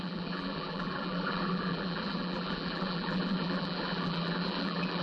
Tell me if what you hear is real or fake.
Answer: fake